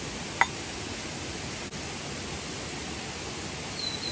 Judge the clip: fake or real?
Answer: real